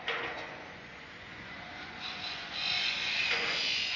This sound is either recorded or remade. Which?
remade